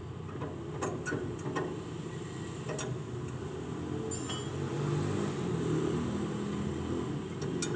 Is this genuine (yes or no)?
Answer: yes